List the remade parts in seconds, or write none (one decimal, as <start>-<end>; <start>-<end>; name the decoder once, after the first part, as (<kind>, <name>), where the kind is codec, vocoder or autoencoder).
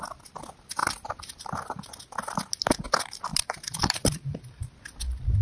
0.8-1.5 (vocoder, BigVGAN v2); 3.3-4.6